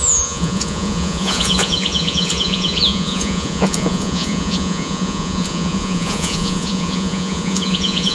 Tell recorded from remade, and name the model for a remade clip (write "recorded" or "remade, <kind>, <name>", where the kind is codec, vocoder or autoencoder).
remade, vocoder, Vocos